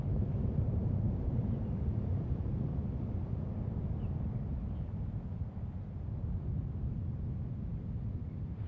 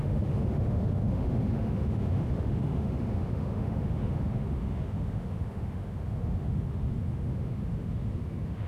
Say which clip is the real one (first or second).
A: first